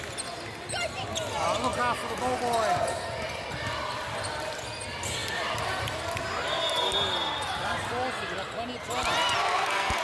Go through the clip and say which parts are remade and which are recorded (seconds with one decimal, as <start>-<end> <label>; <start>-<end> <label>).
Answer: 0.0-9.4 recorded; 9.4-10.0 remade

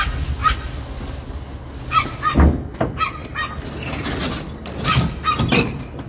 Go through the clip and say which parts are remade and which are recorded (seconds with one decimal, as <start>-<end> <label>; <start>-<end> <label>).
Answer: 0.0-6.1 recorded